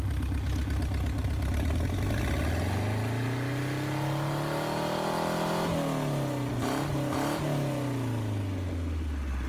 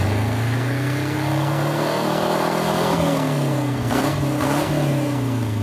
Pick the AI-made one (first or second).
second